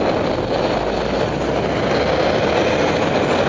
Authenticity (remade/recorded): recorded